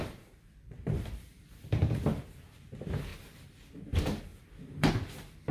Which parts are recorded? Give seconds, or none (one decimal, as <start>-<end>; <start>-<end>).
3.1-3.7